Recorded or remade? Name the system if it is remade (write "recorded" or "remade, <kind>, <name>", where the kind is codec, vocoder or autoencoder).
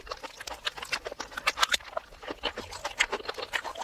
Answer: recorded